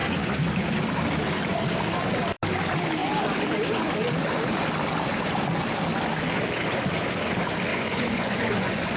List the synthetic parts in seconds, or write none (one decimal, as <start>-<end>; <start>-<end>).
7.7-9.0